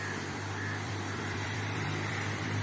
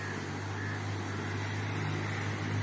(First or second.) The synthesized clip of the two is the first